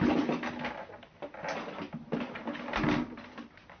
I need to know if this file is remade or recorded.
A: recorded